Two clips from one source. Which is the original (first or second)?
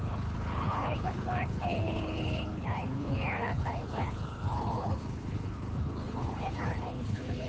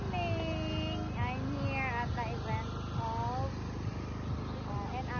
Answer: second